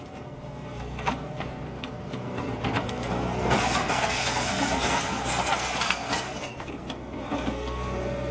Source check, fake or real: fake